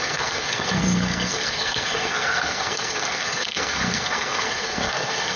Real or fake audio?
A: fake